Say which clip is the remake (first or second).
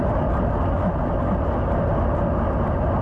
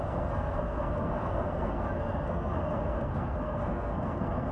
second